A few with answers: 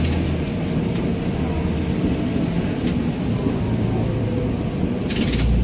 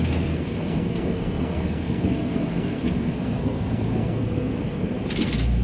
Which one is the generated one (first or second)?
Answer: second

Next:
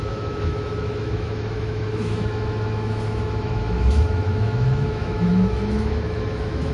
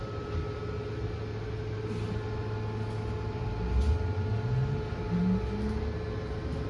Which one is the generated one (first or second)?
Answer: first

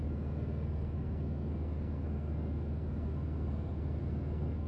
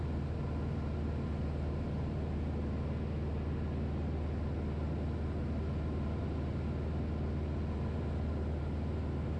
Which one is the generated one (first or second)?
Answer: first